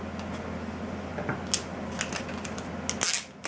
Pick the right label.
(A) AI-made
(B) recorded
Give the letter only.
B